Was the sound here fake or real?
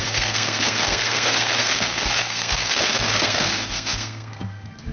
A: fake